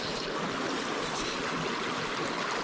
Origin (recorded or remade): recorded